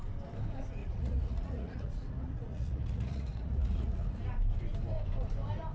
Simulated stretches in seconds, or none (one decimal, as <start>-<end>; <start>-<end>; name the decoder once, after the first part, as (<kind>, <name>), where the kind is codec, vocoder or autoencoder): 0.8-4.2 (vocoder, Vocos)

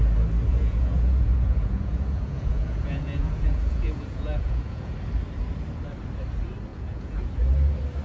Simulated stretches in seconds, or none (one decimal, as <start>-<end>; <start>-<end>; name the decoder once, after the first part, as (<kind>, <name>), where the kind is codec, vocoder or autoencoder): 0.5-4.9 (vocoder, Vocos); 6.7-7.3

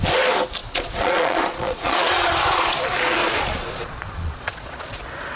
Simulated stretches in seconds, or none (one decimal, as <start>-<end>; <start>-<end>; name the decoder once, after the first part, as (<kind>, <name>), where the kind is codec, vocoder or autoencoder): 0.6-2.8 (vocoder, Vocos); 3.2-5.0

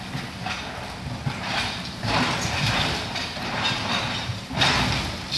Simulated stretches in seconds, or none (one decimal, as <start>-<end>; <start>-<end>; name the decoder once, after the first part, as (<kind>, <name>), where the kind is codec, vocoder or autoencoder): 1.2-4.4 (vocoder, BigVGAN v2)

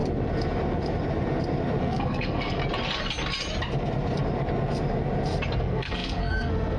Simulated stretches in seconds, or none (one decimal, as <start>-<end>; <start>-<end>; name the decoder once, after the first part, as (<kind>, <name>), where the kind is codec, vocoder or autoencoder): 1.8-2.6 (codec, SNAC); 5.6-6.8

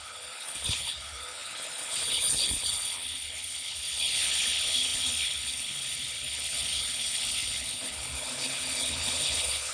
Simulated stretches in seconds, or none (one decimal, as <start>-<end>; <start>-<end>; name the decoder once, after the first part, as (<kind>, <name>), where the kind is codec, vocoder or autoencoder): 0.0-9.7 (codec, HILCodec)

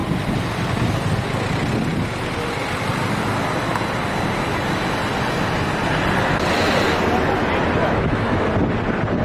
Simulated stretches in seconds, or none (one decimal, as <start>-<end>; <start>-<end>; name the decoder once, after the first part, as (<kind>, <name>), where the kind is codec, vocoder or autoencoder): 7.8-8.5 (autoencoder, DAC-VAE)

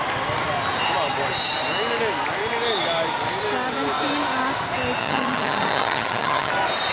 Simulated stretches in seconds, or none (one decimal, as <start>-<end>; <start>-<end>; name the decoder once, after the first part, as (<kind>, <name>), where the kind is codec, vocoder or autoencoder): 5.0-6.5 (vocoder, HiFi-GAN)